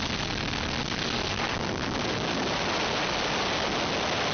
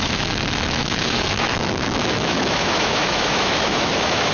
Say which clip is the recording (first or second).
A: first